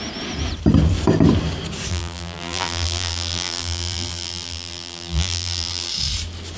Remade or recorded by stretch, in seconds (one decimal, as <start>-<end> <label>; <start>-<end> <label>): 0.0-1.9 recorded; 1.9-5.9 remade; 5.9-6.6 recorded